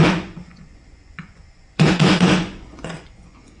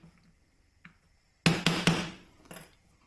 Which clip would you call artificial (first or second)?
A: first